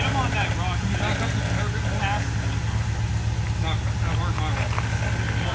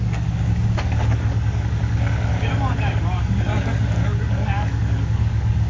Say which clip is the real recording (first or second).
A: first